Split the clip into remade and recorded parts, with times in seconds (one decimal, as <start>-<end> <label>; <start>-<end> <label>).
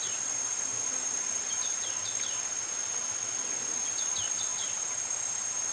0.0-5.7 recorded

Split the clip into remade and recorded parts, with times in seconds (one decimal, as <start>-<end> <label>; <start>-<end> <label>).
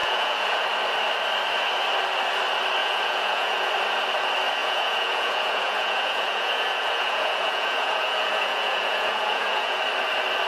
0.0-0.6 remade; 0.6-2.8 recorded; 2.8-3.7 remade; 3.7-4.6 recorded; 4.6-9.8 remade; 9.8-10.5 recorded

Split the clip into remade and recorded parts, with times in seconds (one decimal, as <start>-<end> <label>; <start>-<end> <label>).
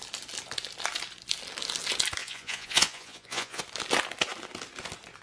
0.0-2.2 recorded; 2.2-3.6 remade; 3.6-5.2 recorded